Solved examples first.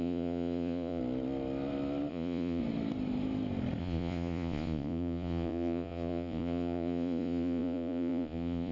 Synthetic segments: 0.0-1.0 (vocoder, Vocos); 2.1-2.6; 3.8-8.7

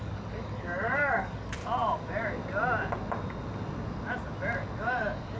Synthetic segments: 0.0-1.6 (codec, DAC); 4.8-5.4

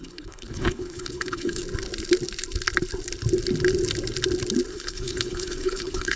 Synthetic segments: 0.0-1.6 (codec, HILCodec); 4.7-6.2

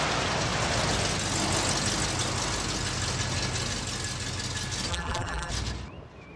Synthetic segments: 4.9-5.5 (vocoder, BigVGAN v2)

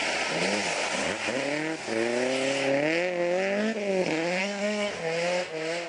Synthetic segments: 4.4-4.9 (codec, SNAC)

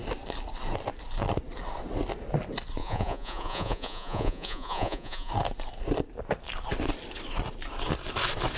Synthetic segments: 2.8-5.3 (vocoder, Vocos)

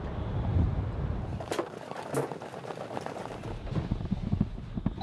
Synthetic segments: none

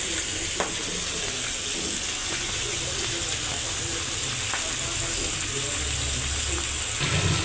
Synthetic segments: 2.2-2.8 (vocoder, Vocos)